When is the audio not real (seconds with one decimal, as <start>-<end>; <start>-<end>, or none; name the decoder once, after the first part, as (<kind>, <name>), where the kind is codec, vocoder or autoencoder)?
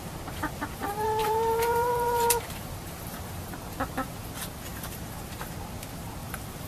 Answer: 0.8-3.4 (vocoder, BigVGAN v2); 4.7-5.5; 6.2-6.7